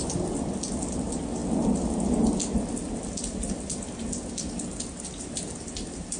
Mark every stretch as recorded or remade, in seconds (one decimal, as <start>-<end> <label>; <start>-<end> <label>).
0.0-6.2 recorded

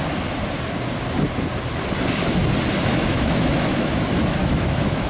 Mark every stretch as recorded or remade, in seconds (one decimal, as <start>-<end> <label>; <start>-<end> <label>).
0.0-2.9 recorded; 2.9-3.9 remade; 3.9-4.4 recorded; 4.4-5.1 remade

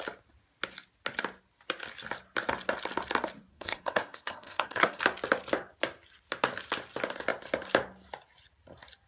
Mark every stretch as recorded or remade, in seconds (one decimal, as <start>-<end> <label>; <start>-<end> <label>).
0.0-3.5 recorded; 3.5-5.0 remade; 5.0-9.1 recorded

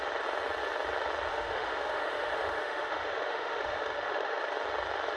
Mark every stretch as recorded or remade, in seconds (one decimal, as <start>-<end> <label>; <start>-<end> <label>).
0.0-1.3 recorded; 1.3-4.4 remade; 4.4-5.2 recorded

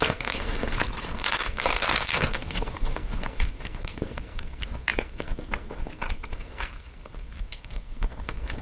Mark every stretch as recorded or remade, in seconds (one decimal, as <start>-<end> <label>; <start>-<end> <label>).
0.0-8.6 remade

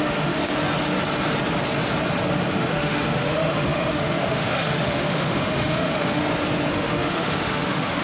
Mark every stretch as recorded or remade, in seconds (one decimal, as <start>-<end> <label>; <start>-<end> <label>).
0.0-0.5 remade; 0.5-2.5 recorded; 2.5-6.2 remade; 6.2-6.7 recorded; 6.7-8.0 remade

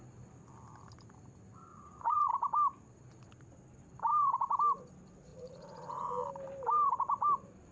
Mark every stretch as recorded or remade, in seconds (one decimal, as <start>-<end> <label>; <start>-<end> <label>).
0.0-1.7 recorded; 1.7-2.3 remade; 2.3-5.3 recorded; 5.3-6.1 remade; 6.1-7.7 recorded

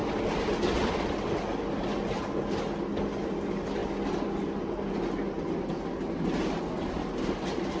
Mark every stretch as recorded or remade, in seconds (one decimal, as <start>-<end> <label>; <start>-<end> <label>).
0.0-7.8 recorded